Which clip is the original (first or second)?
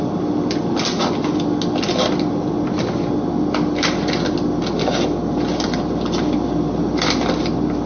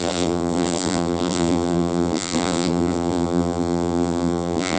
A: first